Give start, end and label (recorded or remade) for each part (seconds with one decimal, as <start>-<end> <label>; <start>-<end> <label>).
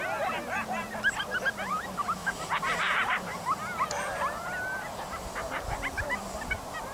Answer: 0.0-2.2 recorded; 2.2-3.9 remade; 3.9-6.9 recorded